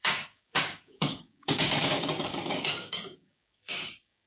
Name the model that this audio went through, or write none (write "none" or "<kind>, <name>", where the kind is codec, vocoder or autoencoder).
codec, DAC